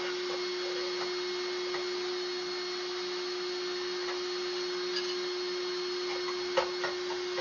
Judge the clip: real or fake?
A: real